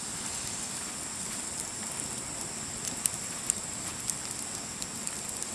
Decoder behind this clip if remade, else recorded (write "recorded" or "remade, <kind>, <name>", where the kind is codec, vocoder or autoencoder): recorded